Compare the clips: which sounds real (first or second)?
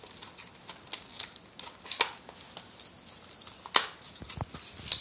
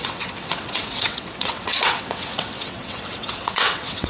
first